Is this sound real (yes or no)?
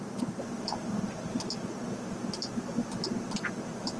yes